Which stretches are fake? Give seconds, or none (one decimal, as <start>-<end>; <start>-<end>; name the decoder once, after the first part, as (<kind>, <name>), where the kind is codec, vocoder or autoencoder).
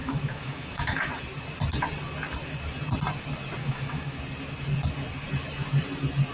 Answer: 0.0-1.1 (autoencoder, DAC-VAE); 3.6-4.2